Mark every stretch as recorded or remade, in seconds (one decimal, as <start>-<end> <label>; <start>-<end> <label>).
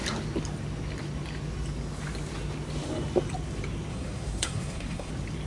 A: 0.0-3.9 recorded; 3.9-5.1 remade; 5.1-5.5 recorded